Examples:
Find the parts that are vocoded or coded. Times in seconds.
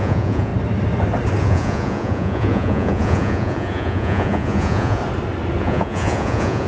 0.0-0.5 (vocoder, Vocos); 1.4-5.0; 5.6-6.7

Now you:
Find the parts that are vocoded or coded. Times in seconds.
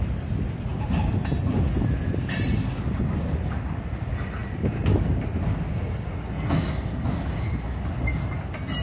none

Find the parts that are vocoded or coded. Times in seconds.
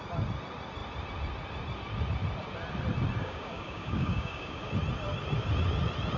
3.2-4.7 (codec, DAC)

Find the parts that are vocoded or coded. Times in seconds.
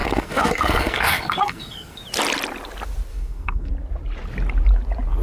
0.0-2.0 (codec, SNAC); 3.1-3.7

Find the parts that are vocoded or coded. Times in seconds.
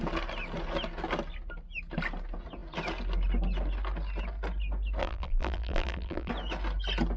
5.0-6.3 (vocoder, BigVGAN v2)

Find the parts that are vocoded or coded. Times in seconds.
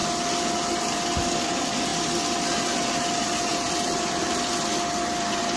3.5-5.6 (vocoder, BigVGAN v2)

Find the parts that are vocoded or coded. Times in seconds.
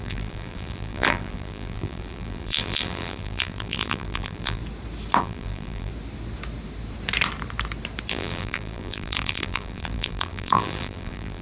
0.0-4.6 (vocoder, BigVGAN v2); 5.2-5.9; 8.1-11.4